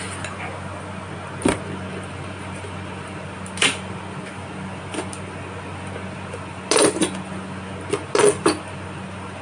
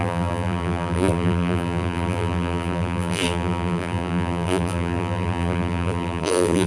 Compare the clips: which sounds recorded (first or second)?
first